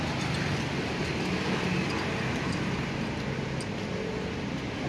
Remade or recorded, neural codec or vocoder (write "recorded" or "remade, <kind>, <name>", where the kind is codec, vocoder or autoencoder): recorded